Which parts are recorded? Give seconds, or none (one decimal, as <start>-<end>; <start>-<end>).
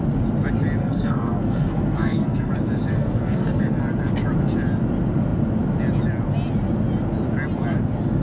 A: 0.0-0.8; 2.5-2.9; 3.8-8.2